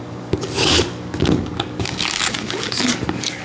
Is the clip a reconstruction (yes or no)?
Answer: yes